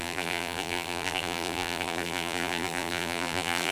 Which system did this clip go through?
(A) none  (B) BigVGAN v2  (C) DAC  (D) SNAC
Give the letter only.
B